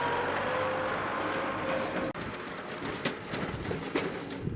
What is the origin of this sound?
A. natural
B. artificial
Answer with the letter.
A